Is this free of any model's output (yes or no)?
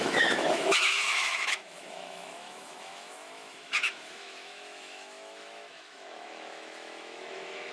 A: no